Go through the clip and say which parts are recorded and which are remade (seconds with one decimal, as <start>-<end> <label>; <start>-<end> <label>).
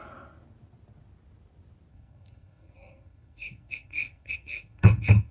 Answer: 0.0-1.9 recorded; 1.9-5.3 remade